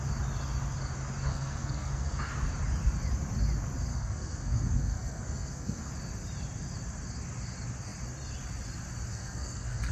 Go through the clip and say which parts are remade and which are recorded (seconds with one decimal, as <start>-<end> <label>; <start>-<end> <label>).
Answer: 0.0-1.3 recorded; 1.3-2.2 remade; 2.2-3.9 recorded; 3.9-5.9 remade; 5.9-9.1 recorded; 9.1-9.9 remade